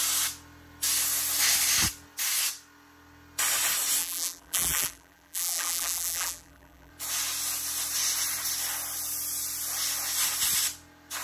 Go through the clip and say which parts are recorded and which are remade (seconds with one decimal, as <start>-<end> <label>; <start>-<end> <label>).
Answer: 0.0-4.0 recorded; 4.0-6.9 remade; 6.9-11.2 recorded